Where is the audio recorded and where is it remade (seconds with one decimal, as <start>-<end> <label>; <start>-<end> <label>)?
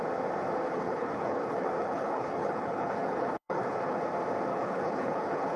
0.0-0.6 recorded; 0.6-4.0 remade; 4.0-4.5 recorded; 4.5-5.6 remade